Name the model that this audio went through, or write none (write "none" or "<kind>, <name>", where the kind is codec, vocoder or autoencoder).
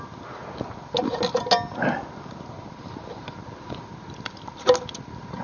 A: none